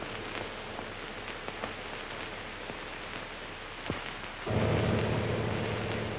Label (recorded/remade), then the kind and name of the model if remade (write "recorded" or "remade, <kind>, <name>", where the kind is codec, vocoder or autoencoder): recorded